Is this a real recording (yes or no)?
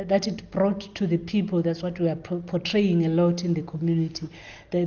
yes